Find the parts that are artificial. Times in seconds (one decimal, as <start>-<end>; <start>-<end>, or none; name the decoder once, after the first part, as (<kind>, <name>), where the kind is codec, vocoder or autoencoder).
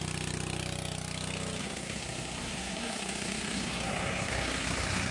1.6-5.1 (codec, SNAC)